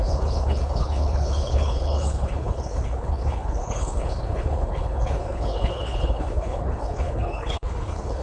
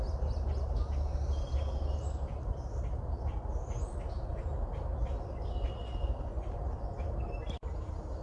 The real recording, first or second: second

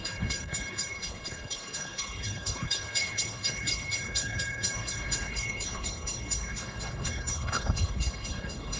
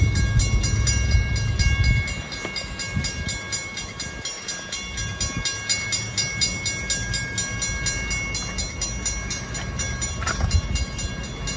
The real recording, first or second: second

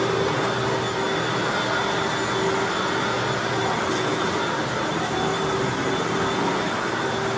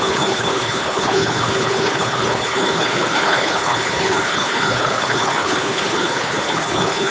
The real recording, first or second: first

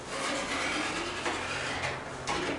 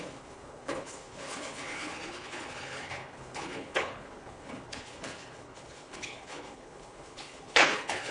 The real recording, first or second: first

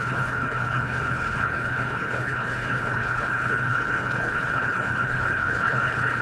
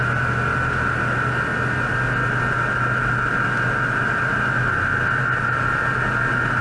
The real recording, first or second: second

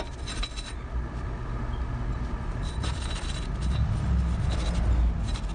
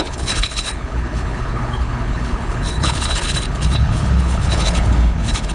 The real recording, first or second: first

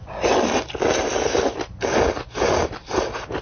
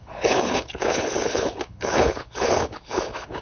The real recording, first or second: first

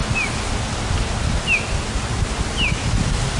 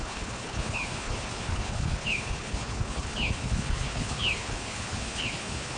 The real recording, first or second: first